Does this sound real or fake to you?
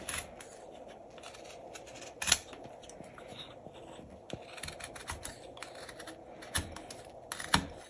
real